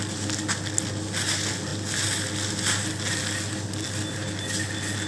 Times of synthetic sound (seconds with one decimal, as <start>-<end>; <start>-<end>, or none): none